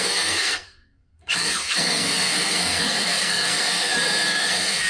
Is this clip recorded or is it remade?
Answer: remade